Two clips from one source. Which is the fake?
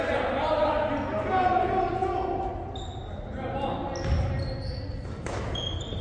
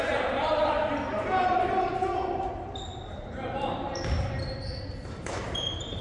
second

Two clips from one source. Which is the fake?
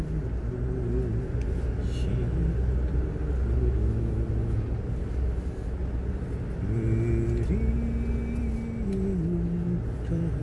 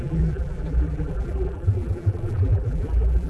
second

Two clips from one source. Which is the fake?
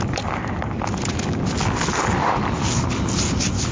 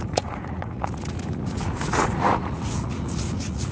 second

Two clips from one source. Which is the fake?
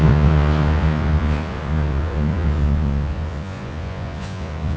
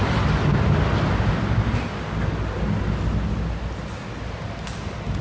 first